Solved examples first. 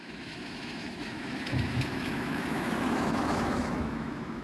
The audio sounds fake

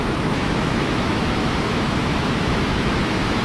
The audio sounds fake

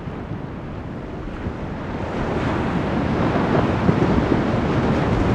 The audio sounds real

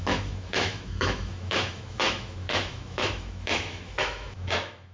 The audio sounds fake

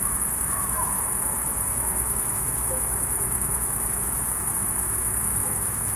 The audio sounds fake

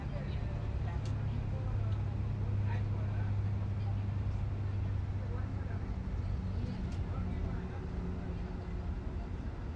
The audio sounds real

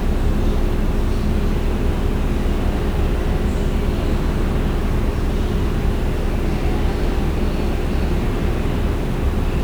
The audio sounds real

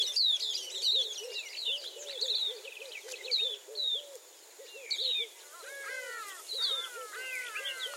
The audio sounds real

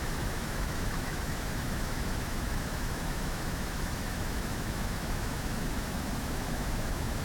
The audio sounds fake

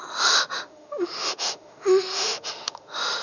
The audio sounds fake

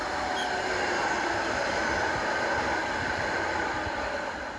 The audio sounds real